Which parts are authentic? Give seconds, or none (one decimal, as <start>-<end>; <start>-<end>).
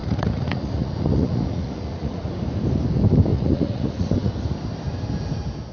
2.3-3.3; 4.3-5.7